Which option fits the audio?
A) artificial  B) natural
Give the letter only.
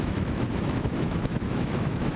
A